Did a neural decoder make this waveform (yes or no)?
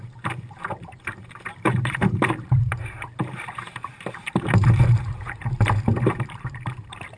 yes